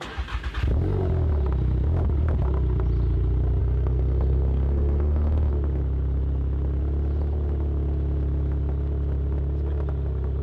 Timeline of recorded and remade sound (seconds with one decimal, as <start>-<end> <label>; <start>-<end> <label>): 0.0-3.6 recorded; 3.6-5.5 remade; 5.5-10.4 recorded